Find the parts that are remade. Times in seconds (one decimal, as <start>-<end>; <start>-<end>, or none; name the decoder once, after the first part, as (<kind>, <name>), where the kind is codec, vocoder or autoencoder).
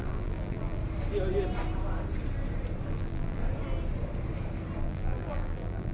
0.0-0.8 (vocoder, BigVGAN v2); 2.9-3.4; 4.8-5.9